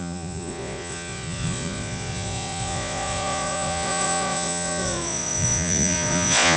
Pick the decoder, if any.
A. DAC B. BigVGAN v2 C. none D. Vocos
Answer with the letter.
D